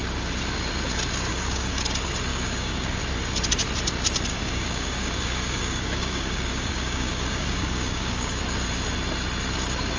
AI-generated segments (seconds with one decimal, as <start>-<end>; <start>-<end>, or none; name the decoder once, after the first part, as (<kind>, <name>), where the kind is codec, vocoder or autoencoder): 1.3-1.8 (codec, DAC); 2.3-3.0; 4.3-8.4